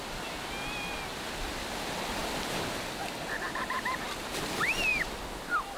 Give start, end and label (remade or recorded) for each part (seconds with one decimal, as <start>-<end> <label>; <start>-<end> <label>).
0.0-5.8 recorded